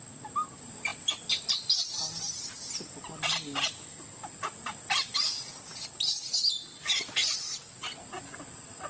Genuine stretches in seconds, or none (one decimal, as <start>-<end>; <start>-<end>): 0.0-8.9